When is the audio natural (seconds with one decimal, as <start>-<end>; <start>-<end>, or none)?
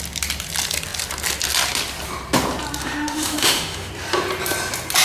0.0-2.8; 3.9-5.0